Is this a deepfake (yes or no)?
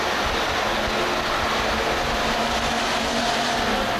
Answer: no